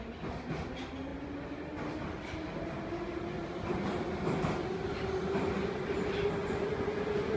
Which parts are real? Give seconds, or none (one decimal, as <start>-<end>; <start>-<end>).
0.0-6.4